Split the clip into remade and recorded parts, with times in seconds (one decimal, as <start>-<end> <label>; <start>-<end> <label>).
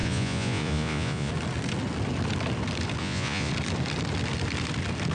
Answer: 0.0-1.3 remade; 1.3-3.0 recorded; 3.0-3.5 remade; 3.5-5.1 recorded